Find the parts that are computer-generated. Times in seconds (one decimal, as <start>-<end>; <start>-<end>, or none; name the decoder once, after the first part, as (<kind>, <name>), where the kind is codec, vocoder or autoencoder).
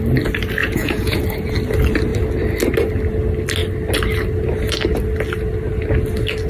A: 0.6-1.2 (vocoder, Vocos)